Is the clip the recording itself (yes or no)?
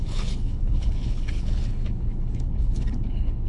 no